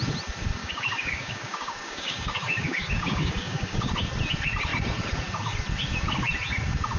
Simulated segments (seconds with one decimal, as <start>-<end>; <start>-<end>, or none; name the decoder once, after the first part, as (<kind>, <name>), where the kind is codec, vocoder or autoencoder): 0.6-3.8 (codec, DAC)